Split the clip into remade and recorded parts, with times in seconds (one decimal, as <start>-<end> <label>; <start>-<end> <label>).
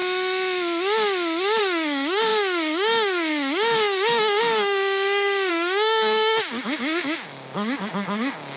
0.0-1.6 recorded; 1.6-8.6 remade